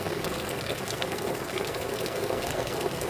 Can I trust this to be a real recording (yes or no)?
no